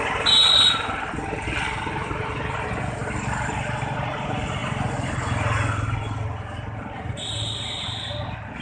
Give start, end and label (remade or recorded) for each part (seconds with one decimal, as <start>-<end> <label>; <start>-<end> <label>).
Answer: 0.0-3.0 recorded; 3.0-3.5 remade; 3.5-8.6 recorded

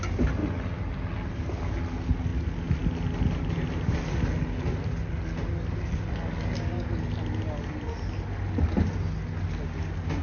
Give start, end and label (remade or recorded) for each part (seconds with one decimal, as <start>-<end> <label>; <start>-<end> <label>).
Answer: 0.0-10.2 recorded